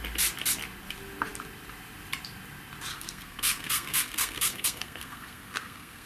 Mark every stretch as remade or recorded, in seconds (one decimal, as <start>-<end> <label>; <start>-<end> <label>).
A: 0.0-2.9 recorded; 2.9-6.1 remade